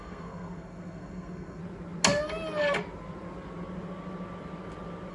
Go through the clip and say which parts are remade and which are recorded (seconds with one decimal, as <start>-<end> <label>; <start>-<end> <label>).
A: 0.0-1.6 remade; 1.6-5.1 recorded